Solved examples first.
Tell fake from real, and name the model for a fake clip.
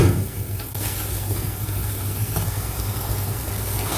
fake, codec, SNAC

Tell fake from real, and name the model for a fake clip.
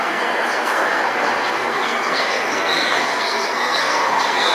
fake, codec, SNAC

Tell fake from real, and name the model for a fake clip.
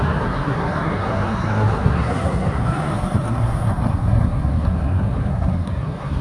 fake, codec, SNAC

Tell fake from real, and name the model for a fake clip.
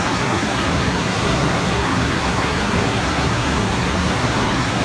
fake, codec, SNAC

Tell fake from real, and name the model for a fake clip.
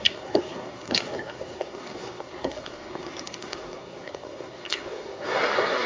fake, codec, SNAC